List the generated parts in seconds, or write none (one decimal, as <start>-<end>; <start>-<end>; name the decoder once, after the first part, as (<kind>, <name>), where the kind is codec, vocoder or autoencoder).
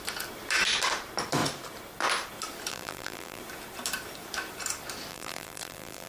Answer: 2.7-3.4 (vocoder, BigVGAN v2); 5.1-6.1